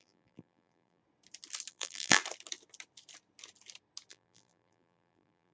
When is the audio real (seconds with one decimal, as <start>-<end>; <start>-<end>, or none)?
1.0-1.7; 2.2-4.1